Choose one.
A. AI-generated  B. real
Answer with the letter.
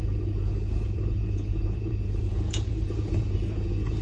A